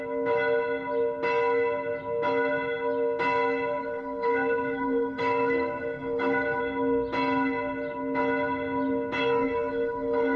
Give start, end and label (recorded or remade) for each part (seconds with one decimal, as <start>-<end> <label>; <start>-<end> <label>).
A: 0.0-3.8 recorded; 3.8-6.6 remade; 6.6-9.2 recorded; 9.2-10.4 remade